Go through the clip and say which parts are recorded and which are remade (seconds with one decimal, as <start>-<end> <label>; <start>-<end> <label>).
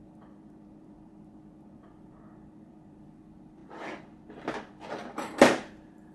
0.0-6.1 remade